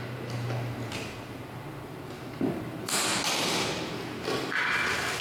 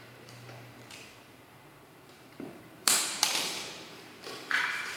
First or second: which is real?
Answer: first